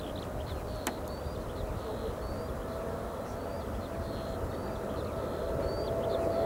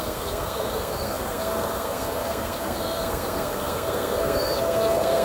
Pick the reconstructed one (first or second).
second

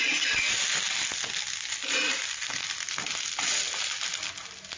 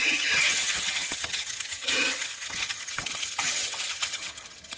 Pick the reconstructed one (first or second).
second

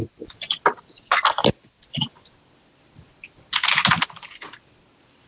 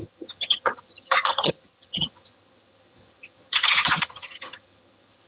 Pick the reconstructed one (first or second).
second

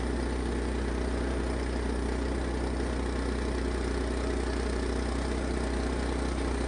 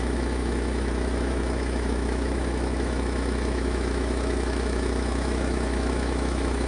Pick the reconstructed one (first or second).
second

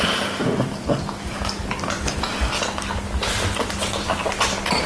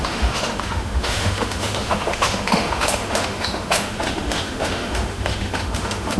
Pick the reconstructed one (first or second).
second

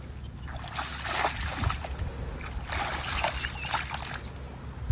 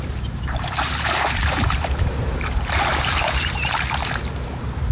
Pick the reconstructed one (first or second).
second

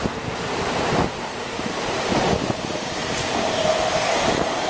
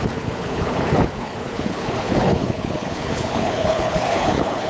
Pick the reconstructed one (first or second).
second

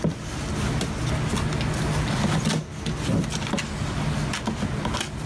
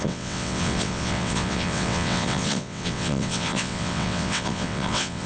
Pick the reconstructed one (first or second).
second